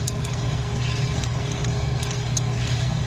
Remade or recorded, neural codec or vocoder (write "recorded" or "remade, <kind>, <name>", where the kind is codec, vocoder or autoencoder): remade, codec, SNAC